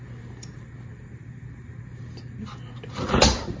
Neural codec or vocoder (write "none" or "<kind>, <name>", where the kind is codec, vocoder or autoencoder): none